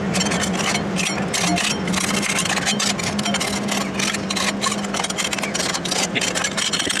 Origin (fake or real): real